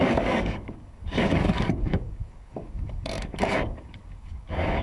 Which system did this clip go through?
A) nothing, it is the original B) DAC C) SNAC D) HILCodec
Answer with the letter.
B